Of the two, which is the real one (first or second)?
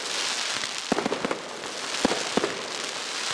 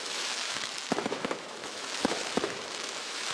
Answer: first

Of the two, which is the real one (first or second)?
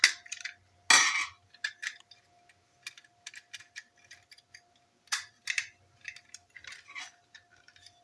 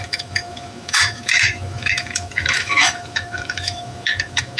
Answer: first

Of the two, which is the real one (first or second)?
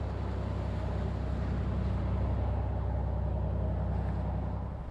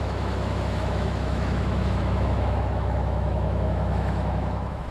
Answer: first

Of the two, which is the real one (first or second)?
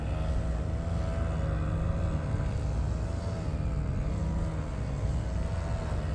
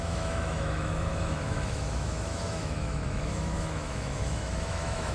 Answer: first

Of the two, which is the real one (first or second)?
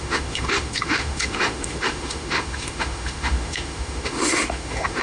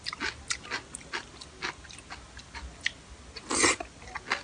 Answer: second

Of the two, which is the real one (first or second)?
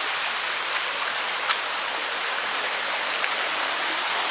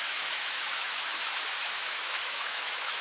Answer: first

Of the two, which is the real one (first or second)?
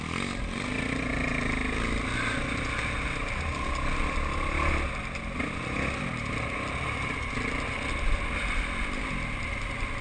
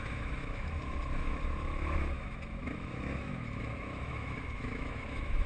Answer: first